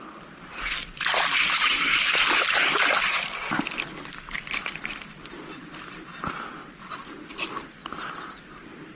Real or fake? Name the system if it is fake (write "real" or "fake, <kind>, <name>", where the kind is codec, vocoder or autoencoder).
fake, vocoder, BigVGAN v2